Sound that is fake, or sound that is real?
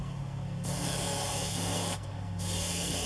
fake